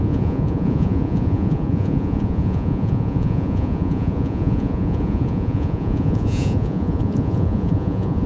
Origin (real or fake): fake